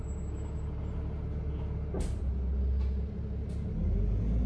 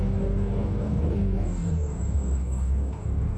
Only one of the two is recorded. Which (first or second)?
first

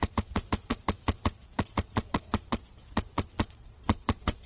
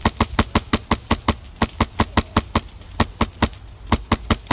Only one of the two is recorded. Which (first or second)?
second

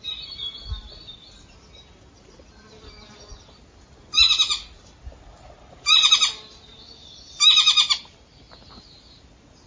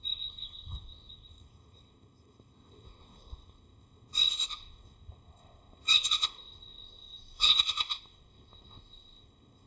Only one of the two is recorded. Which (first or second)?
first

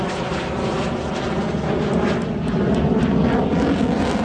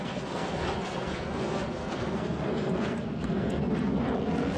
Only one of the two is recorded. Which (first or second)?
first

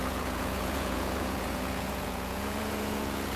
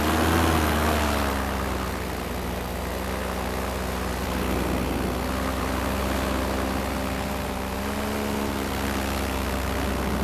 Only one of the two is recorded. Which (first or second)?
second